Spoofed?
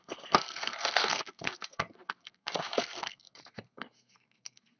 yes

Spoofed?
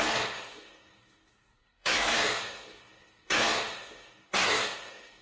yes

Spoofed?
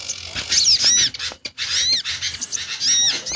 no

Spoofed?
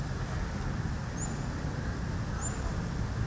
no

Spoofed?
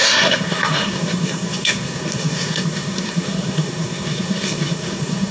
yes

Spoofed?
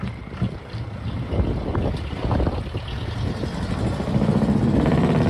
no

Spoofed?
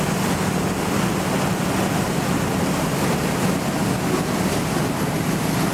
no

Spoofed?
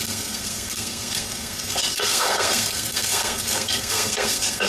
yes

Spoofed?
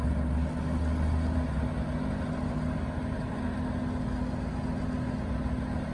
no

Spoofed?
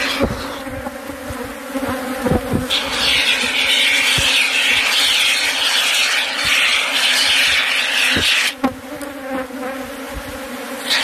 no